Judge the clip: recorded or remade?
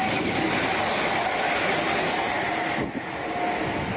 recorded